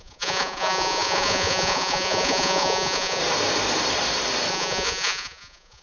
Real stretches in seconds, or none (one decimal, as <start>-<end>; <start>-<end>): 3.2-4.5